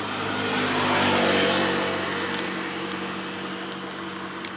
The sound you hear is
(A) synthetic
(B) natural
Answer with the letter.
B